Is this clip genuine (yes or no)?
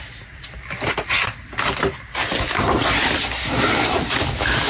yes